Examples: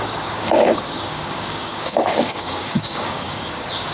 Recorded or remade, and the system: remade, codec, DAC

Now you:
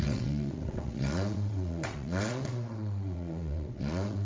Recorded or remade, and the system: remade, vocoder, WaveNeXt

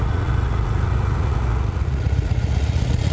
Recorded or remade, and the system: remade, vocoder, Vocos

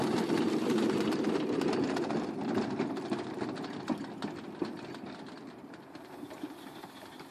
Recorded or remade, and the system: remade, vocoder, BigVGAN v2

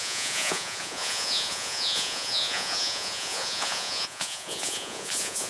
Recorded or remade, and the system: remade, vocoder, Vocos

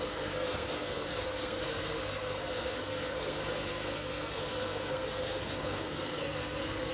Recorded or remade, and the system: remade, codec, SNAC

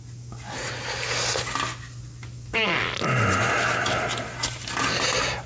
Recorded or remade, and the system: recorded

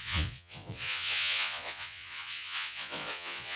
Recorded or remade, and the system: remade, vocoder, Vocos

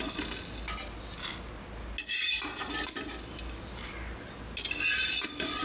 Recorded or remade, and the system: recorded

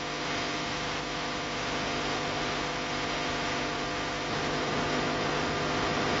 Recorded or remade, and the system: recorded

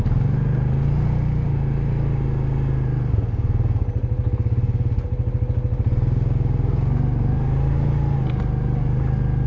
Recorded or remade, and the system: recorded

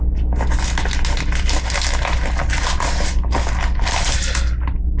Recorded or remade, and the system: recorded